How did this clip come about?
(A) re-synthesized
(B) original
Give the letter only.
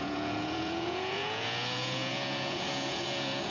A